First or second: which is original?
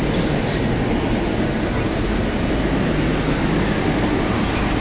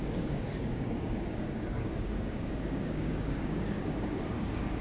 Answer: first